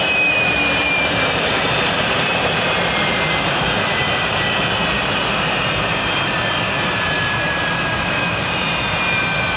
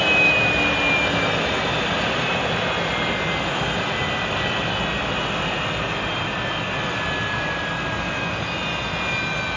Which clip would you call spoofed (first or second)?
first